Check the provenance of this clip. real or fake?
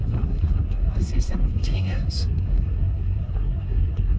fake